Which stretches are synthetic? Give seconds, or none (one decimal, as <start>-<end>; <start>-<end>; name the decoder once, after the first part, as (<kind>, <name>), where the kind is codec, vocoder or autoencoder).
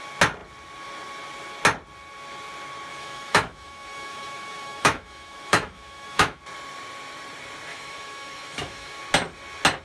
2.9-6.4 (autoencoder, DAC-VAE); 7.7-9.0